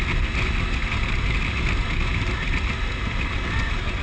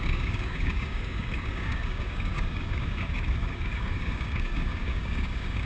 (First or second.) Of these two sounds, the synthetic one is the second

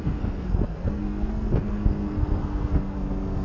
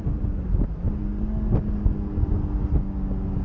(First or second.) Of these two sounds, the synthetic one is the first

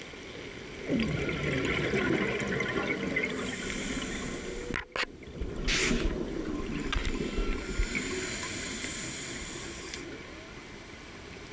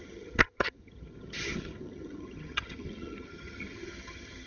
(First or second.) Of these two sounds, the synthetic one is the second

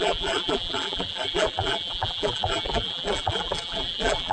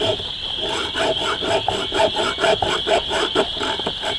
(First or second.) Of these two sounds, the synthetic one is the first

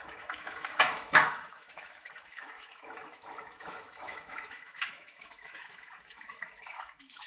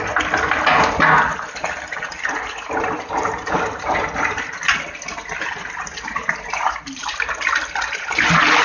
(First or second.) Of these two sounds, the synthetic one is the first